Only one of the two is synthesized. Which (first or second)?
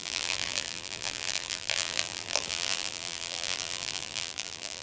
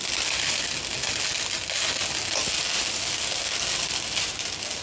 first